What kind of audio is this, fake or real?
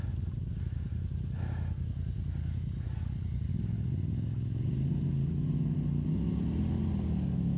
real